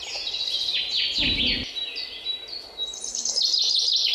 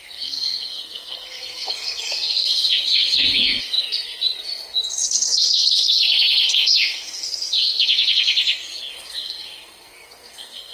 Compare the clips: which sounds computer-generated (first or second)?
second